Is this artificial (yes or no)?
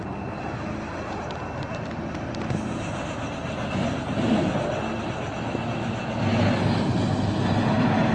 no